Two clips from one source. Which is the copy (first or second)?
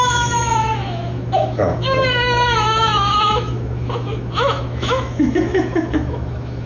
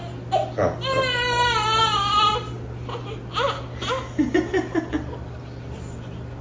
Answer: first